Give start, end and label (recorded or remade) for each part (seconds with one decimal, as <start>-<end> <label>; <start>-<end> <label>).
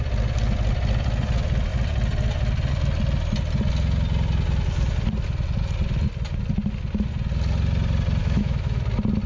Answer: 0.0-8.2 recorded; 8.2-8.8 remade; 8.8-9.3 recorded